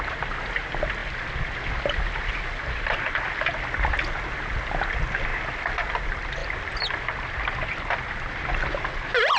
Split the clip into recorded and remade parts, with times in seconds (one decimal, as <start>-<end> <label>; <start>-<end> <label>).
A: 0.0-9.4 recorded